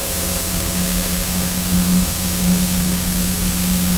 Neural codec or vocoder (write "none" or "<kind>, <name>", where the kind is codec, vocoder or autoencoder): codec, SNAC